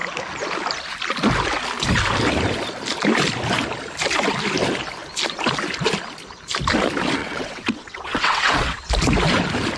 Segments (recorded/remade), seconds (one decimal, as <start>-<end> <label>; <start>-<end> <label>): 0.0-7.2 recorded; 7.2-8.9 remade; 8.9-9.8 recorded